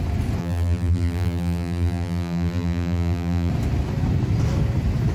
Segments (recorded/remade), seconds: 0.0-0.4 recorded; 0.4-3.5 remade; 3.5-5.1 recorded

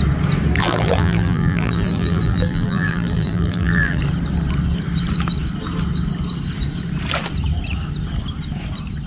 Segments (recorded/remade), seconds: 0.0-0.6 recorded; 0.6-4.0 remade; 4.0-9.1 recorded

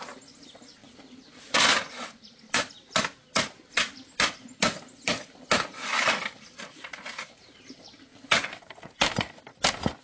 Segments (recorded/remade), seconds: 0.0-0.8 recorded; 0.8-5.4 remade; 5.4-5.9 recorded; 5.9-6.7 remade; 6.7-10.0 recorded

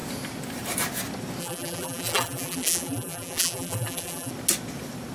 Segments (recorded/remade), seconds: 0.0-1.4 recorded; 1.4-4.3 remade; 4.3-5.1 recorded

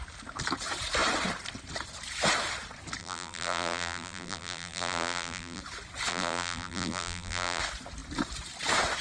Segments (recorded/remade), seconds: 0.0-3.0 recorded; 3.0-5.6 remade; 5.6-6.1 recorded; 6.1-7.6 remade; 7.6-9.0 recorded

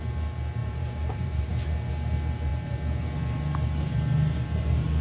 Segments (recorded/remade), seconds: 0.0-0.6 recorded; 0.6-1.5 remade; 1.5-5.0 recorded